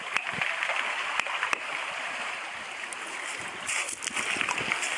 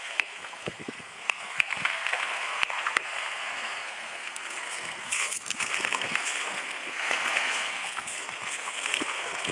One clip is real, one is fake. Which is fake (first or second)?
second